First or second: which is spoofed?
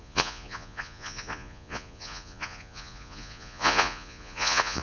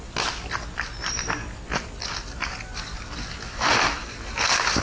first